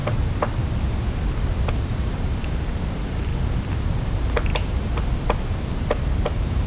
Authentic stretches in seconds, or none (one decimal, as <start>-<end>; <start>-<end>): 0.0-1.7; 3.3-4.1